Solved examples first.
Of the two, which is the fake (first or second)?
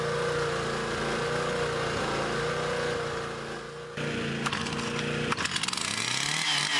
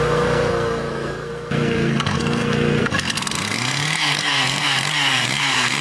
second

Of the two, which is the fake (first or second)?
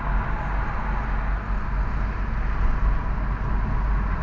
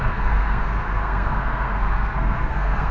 second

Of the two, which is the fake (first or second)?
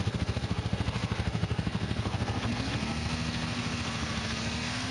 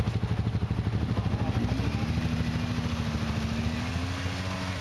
first